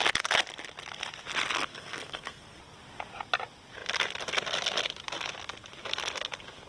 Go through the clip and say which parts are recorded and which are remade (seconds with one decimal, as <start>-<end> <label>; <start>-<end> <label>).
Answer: 0.0-1.7 recorded; 1.7-2.6 remade; 2.6-6.7 recorded